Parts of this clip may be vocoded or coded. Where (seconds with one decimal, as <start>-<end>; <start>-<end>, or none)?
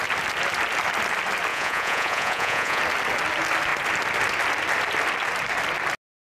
1.5-2.8